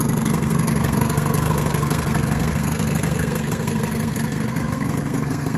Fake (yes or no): yes